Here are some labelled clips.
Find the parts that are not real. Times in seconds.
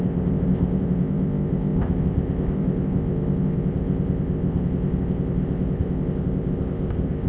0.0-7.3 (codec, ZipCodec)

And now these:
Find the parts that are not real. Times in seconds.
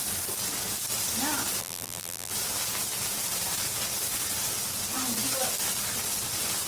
1.6-2.3 (vocoder, BigVGAN v2)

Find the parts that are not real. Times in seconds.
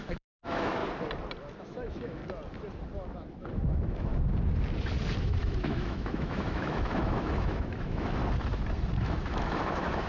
0.0-0.8 (autoencoder, DAC-VAE); 1.6-2.2; 3.5-4.1; 5.2-8.2; 9.0-10.1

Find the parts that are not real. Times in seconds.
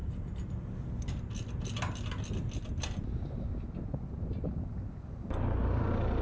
none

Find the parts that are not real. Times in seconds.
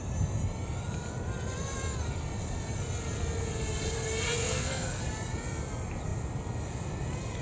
4.4-5.0 (codec, SNAC)